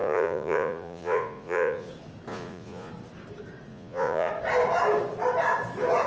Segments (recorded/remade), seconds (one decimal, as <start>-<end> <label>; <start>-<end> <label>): 0.0-1.9 remade; 1.9-2.3 recorded; 2.3-2.9 remade; 2.9-3.7 recorded; 3.7-4.3 remade; 4.3-6.1 recorded